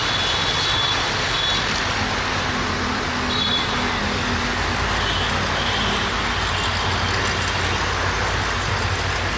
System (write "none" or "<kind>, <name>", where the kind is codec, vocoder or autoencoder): none